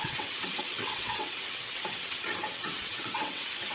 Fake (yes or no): yes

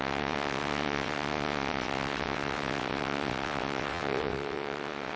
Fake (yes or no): yes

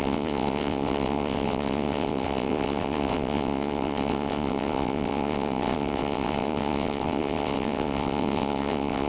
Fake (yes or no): yes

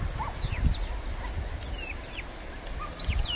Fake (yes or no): no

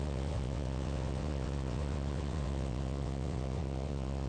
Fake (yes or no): yes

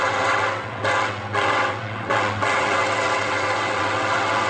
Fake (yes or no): yes